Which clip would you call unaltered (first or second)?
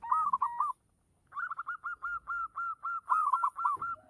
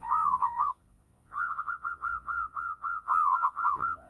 first